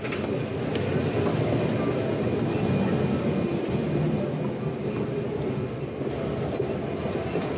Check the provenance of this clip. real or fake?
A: real